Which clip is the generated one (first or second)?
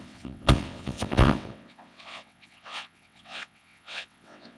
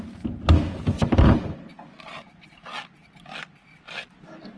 first